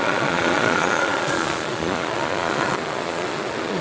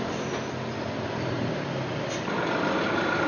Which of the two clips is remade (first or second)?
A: first